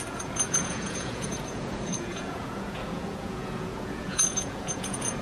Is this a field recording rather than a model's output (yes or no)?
no